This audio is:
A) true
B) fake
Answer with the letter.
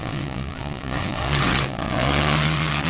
B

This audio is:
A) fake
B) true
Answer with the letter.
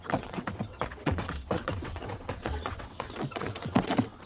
A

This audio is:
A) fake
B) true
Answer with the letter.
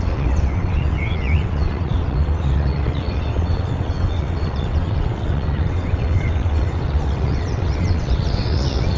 A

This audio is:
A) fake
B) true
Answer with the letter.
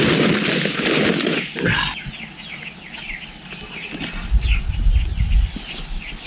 B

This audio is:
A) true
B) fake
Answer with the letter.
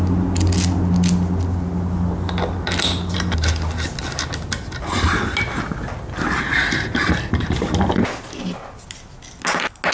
A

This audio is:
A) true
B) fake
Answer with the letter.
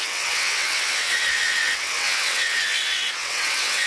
B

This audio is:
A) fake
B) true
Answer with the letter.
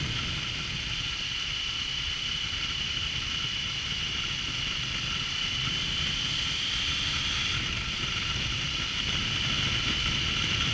B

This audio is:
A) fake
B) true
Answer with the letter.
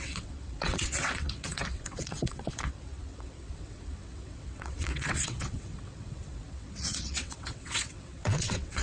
A